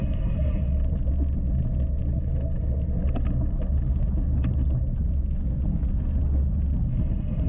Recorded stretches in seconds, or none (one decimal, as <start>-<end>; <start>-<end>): 0.0-7.5